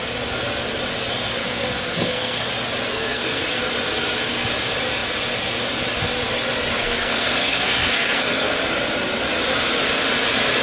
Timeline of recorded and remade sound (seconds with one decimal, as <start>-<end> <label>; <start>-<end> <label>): 0.0-1.4 recorded; 1.4-2.5 remade; 2.5-2.9 recorded; 2.9-3.6 remade; 3.6-6.7 recorded; 6.7-8.5 remade; 8.5-10.6 recorded